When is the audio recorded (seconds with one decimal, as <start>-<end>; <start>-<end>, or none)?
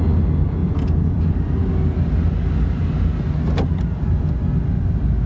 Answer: 0.0-0.6; 1.2-5.3